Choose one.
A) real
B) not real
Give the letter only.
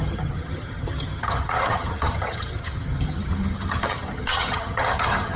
B